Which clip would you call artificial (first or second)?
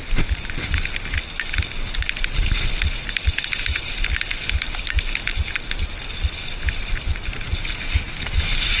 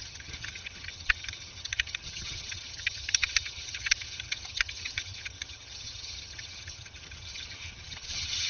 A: second